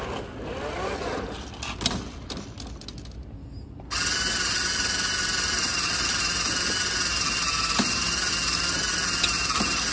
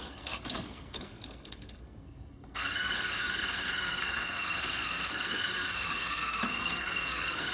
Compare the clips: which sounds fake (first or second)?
second